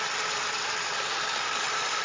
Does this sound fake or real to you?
real